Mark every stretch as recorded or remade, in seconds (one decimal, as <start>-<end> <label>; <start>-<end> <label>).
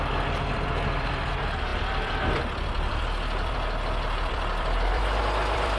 0.0-5.8 remade